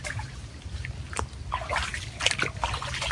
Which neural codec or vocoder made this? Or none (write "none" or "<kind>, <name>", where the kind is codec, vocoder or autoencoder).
none